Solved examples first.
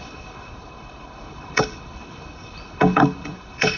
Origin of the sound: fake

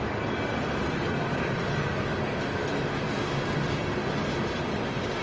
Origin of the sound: real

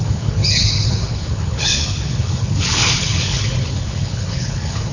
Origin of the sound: fake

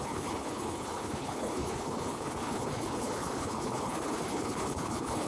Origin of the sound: fake